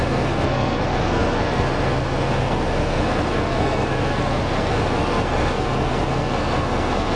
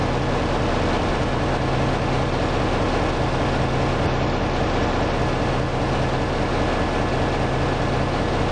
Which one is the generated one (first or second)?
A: first